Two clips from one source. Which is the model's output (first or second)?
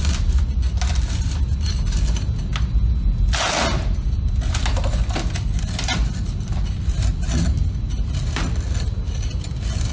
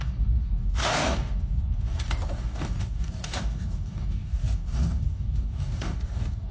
second